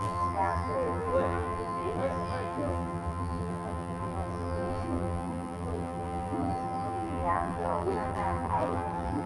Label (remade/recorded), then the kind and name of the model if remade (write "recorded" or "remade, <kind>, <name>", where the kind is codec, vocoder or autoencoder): remade, vocoder, BigVGAN v2